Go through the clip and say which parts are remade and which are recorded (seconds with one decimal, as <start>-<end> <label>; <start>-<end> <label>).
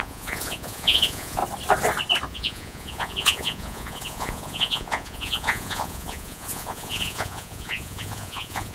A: 0.0-1.4 remade; 1.4-2.3 recorded; 2.3-8.7 remade